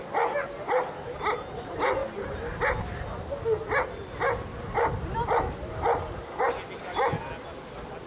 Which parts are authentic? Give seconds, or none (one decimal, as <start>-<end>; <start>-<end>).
0.0-8.1